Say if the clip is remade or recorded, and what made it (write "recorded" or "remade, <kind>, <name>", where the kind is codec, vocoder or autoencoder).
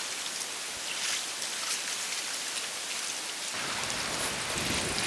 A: recorded